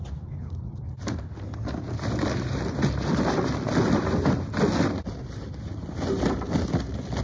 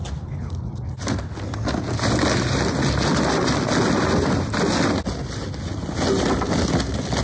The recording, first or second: second